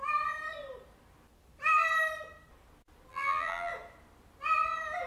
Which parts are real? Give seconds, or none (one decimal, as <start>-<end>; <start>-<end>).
0.0-3.1; 3.7-5.1